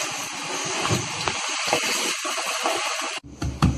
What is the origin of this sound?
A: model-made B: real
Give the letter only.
B